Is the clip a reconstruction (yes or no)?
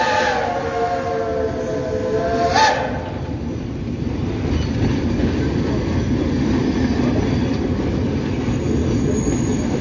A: no